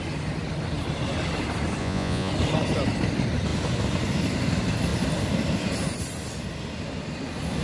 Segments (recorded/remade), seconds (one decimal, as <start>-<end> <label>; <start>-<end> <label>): 0.0-1.8 recorded; 1.8-2.3 remade; 2.3-7.6 recorded